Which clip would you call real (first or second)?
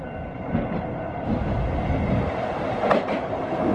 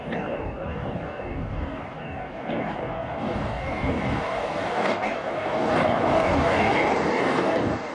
first